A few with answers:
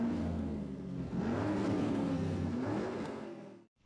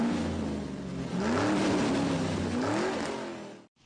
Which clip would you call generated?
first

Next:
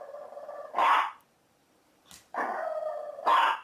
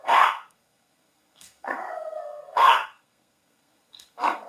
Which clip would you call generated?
second